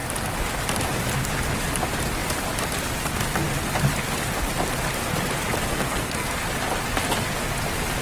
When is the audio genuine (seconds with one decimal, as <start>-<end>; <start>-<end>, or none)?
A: 0.0-5.7; 6.3-8.0